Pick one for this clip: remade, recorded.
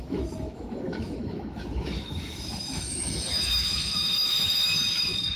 remade